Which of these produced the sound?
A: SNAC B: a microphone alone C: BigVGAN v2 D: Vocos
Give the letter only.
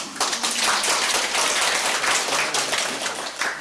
B